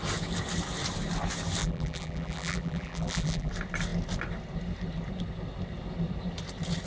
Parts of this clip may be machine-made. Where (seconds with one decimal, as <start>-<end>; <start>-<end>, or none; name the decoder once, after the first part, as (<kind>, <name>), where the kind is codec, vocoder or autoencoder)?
1.6-3.5 (vocoder, BigVGAN v2)